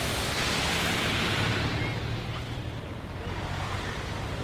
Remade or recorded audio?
remade